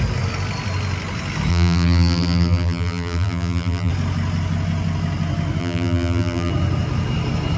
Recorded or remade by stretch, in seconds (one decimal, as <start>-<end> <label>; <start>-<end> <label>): 0.0-1.5 recorded; 1.5-3.9 remade; 3.9-5.6 recorded; 5.6-6.5 remade; 6.5-7.6 recorded